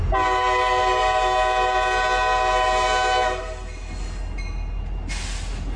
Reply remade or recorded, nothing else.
recorded